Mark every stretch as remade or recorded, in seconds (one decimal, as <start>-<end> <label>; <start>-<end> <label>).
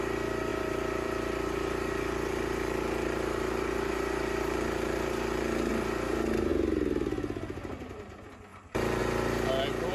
0.0-0.5 recorded; 0.5-5.7 remade; 5.7-8.5 recorded; 8.5-9.0 remade; 9.0-9.9 recorded